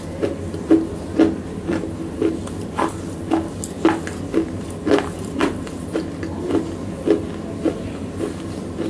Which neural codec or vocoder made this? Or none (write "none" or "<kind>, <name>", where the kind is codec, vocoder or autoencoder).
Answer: none